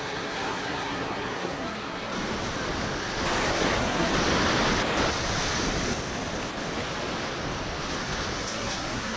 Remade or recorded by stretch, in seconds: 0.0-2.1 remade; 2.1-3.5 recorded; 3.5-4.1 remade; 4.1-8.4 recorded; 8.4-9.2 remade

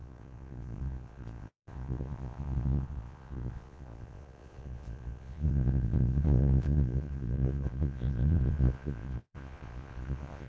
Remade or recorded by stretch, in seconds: 0.0-10.5 remade

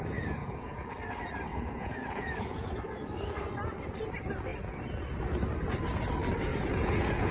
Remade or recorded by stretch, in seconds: 0.0-0.4 recorded; 0.4-0.9 remade; 0.9-1.5 recorded; 1.5-2.7 remade; 2.7-6.5 recorded; 6.5-7.3 remade

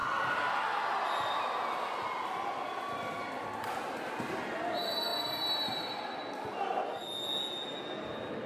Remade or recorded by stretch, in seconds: 0.0-8.5 recorded

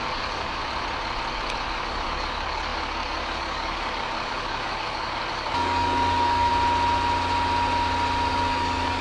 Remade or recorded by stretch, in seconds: 0.0-0.6 remade; 0.6-1.3 recorded; 1.3-6.5 remade; 6.5-8.3 recorded; 8.3-9.0 remade